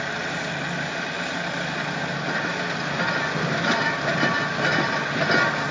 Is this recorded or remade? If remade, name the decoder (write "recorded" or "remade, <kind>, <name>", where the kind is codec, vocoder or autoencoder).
recorded